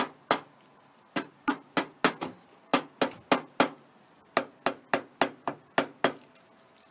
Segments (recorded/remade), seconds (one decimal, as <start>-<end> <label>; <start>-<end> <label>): 0.0-6.9 recorded